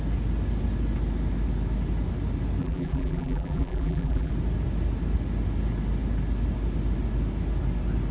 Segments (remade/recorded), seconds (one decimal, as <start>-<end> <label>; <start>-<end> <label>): 0.0-2.6 recorded; 2.6-4.3 remade; 4.3-8.1 recorded